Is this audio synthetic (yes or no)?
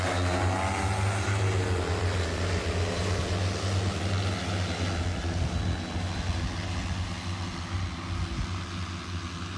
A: no